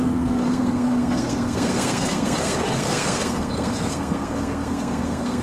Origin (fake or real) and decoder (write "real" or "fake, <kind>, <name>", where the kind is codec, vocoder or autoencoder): fake, codec, SNAC